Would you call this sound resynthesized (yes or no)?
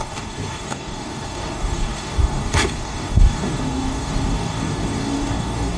yes